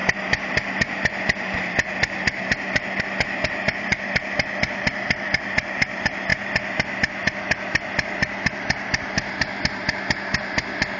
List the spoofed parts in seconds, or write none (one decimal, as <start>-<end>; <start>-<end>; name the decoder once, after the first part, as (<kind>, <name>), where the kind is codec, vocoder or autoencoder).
none